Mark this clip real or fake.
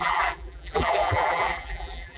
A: fake